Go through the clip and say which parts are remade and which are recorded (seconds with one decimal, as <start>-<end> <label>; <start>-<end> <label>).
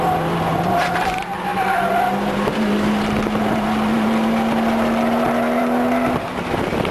0.0-6.9 recorded